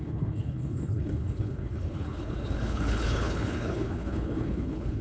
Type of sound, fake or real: fake